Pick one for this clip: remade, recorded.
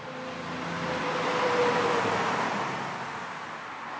recorded